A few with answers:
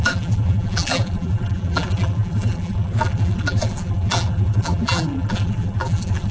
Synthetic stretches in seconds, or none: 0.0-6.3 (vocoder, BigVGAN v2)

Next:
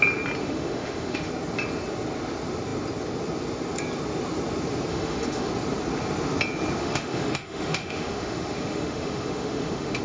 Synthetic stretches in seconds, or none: 0.4-1.3 (autoencoder, DAC-VAE); 4.9-5.5; 6.8-10.0